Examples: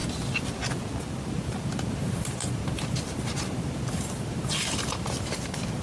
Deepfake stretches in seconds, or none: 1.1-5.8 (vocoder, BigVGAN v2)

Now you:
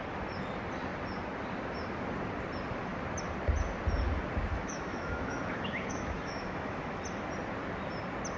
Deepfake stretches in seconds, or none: 4.5-7.0 (autoencoder, DAC-VAE)

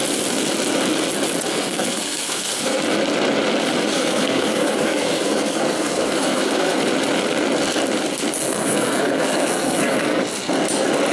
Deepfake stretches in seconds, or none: 1.5-2.8 (codec, SNAC); 3.9-6.8; 8.4-10.2

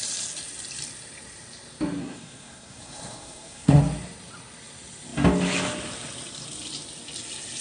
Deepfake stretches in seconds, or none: 2.0-3.8 (codec, SNAC)

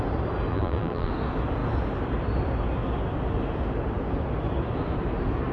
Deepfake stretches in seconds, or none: 0.5-1.1 (vocoder, BigVGAN v2)